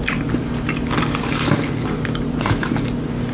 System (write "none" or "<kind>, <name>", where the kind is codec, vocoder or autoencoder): none